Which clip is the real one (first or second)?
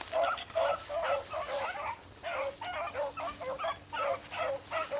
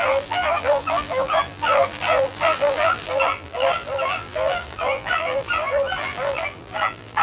first